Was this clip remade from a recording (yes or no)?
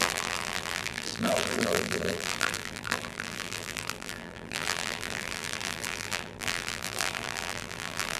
yes